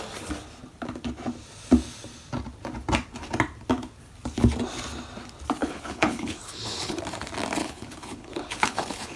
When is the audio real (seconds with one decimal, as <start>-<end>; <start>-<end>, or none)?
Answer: 0.0-5.6; 7.0-7.6